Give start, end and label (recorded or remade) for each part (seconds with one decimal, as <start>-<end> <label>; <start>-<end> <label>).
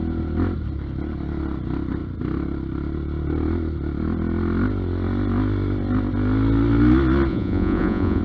0.0-7.3 recorded; 7.3-8.2 remade